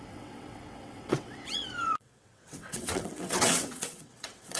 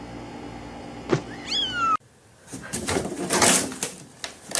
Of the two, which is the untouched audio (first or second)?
second